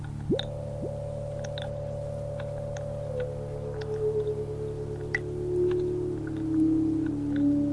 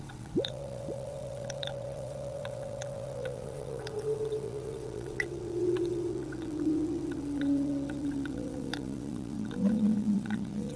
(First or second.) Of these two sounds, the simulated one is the second